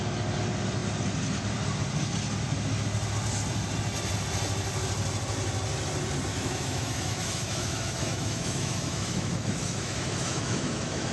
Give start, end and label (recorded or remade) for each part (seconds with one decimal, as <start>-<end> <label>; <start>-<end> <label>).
0.0-6.3 recorded; 6.3-11.1 remade